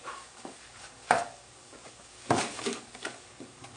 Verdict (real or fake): fake